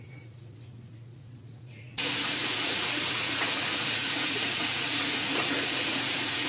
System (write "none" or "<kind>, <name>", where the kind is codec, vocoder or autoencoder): vocoder, Vocos